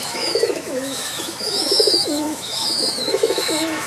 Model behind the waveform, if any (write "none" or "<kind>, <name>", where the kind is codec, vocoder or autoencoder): autoencoder, DAC-VAE